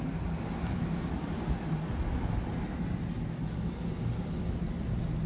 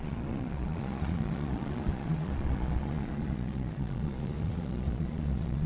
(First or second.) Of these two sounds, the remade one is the second